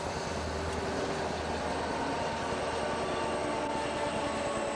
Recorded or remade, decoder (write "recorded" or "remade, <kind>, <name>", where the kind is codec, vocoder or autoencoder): recorded